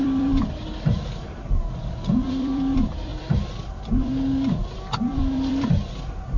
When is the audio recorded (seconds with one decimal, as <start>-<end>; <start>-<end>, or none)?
none